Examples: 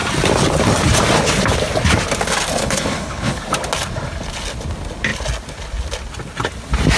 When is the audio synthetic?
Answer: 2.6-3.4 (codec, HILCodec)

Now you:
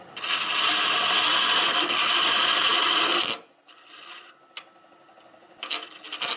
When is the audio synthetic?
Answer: none

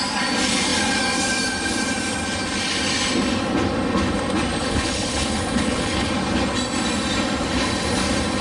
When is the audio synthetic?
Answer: 4.6-6.1 (codec, HILCodec)